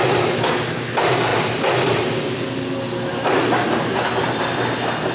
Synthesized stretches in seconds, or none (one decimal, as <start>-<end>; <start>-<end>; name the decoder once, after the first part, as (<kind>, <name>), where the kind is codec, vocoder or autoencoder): none